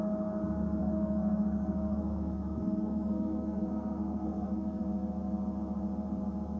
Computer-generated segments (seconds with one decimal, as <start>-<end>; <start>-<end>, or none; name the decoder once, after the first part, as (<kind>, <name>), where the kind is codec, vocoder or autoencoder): 0.8-4.8 (codec, SNAC)